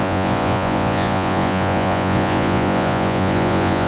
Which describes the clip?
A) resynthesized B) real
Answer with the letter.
A